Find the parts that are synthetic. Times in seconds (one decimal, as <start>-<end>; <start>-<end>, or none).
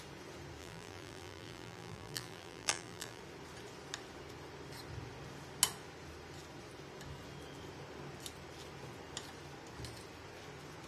0.6-3.2